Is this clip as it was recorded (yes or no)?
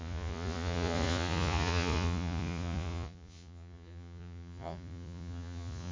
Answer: no